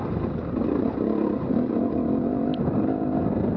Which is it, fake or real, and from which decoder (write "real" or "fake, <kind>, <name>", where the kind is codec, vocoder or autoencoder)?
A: real